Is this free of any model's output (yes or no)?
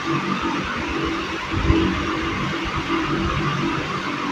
no